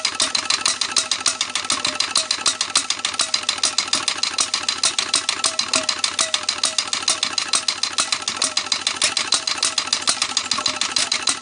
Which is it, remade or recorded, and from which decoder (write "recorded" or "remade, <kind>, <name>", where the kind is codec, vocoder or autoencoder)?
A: recorded